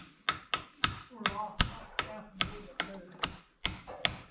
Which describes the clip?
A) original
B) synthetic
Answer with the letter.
A